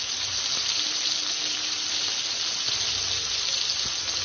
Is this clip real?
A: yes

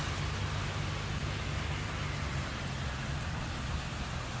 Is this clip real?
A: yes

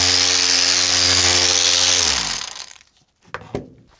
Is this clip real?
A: yes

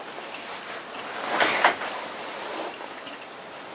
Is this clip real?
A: yes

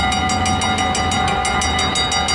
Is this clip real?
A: yes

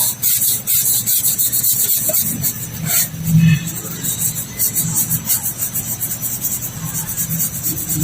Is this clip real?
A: yes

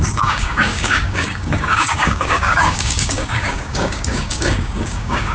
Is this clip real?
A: no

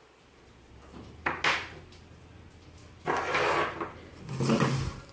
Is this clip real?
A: yes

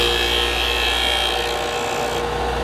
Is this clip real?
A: yes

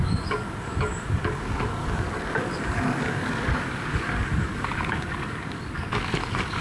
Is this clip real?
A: no